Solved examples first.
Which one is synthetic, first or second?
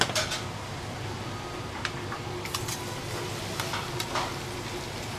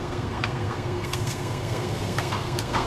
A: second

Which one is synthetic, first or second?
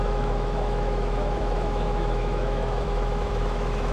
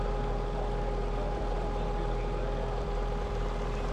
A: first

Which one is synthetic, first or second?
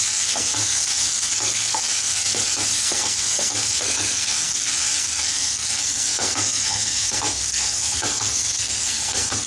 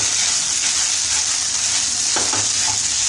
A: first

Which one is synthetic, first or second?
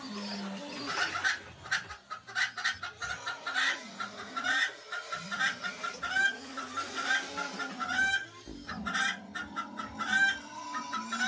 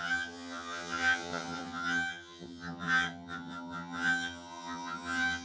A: second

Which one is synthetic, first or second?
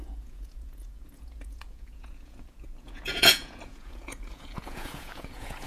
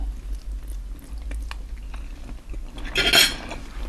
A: first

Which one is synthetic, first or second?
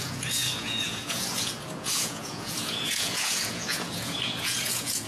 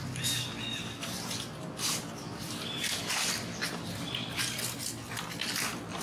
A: first